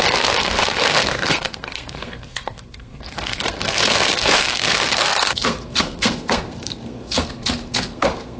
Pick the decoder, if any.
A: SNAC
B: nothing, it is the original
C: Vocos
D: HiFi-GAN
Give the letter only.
A